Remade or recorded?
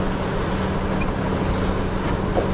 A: recorded